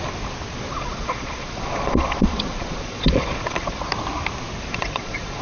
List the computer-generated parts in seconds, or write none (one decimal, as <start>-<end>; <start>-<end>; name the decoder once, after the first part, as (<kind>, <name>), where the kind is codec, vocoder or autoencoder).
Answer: 0.7-3.9 (vocoder, Vocos); 4.7-5.4